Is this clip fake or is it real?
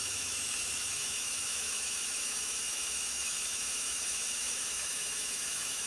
fake